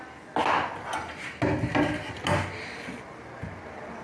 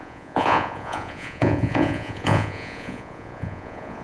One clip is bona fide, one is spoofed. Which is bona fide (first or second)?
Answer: first